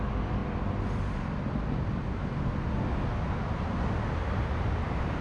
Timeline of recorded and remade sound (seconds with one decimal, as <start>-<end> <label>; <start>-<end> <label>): 0.0-5.2 recorded